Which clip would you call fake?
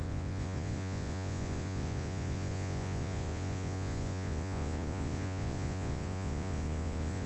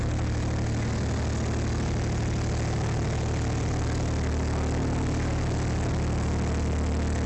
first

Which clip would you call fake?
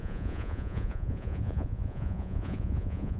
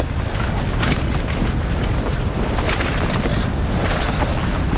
first